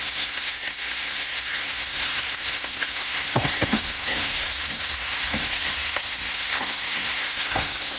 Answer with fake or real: fake